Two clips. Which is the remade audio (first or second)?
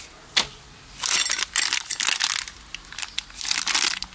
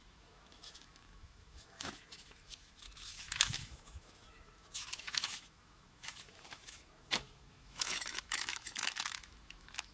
second